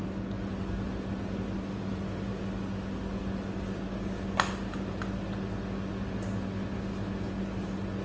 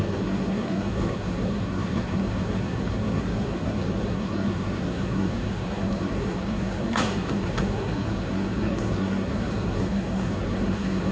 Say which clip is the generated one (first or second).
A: second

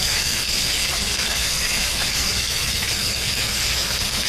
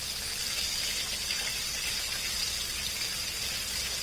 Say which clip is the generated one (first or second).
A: first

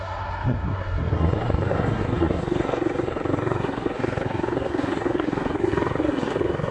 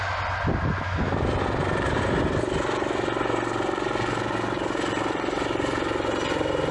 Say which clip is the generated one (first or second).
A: first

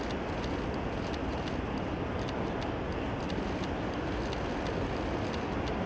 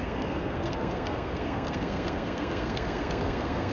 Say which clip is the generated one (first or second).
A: second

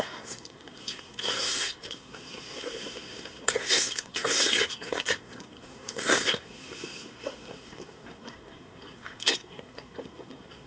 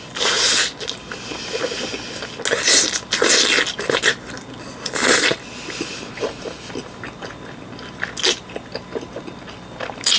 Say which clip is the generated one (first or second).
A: first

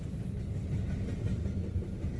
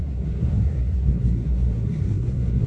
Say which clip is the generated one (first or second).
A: second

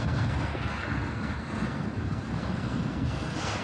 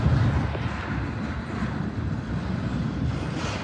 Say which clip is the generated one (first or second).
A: first